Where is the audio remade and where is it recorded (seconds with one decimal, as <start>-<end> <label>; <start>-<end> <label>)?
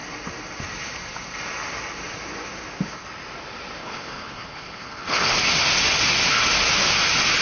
0.0-3.8 recorded; 3.8-5.4 remade; 5.4-7.4 recorded